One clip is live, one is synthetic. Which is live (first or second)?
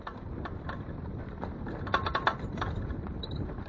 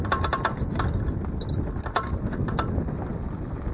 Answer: second